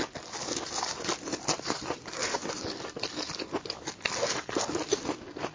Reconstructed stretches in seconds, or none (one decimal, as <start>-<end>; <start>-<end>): none